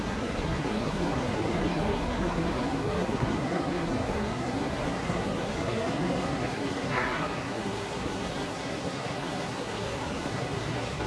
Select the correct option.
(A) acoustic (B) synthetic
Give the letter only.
B